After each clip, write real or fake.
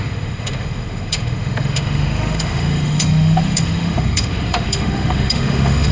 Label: fake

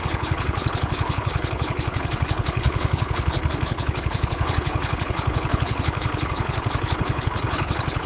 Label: fake